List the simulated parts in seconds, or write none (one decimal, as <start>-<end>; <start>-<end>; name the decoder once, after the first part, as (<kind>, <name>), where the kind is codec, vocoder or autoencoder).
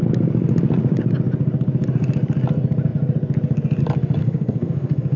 4.2-5.2 (codec, SNAC)